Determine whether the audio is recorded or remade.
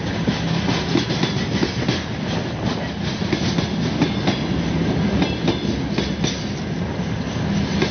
recorded